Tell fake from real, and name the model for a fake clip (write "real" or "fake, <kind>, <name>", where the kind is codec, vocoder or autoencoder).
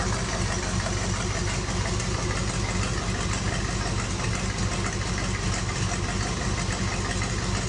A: real